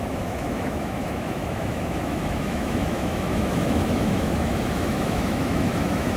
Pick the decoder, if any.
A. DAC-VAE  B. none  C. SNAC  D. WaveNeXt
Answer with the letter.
A